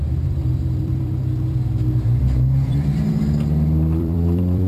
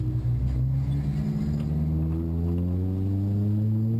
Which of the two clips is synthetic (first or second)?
first